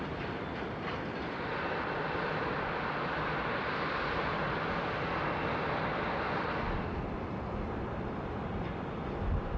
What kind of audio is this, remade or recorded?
recorded